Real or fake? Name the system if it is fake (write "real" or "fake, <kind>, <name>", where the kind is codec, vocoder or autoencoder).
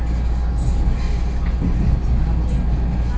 real